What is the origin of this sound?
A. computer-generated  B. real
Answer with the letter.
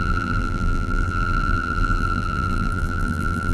A